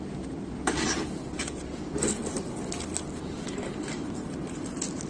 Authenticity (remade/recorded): recorded